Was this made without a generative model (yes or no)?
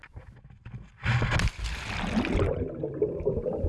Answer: yes